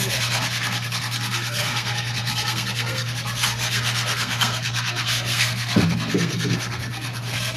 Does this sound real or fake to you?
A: fake